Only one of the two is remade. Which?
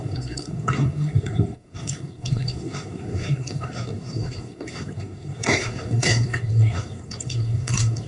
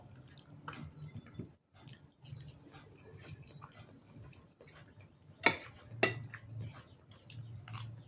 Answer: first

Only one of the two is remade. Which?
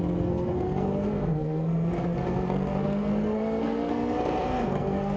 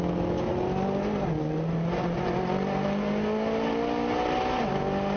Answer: first